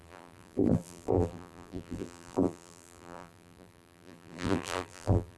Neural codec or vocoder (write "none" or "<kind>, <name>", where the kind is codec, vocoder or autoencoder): vocoder, BigVGAN v2